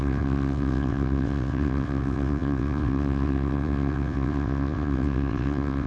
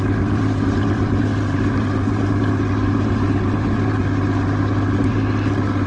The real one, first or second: second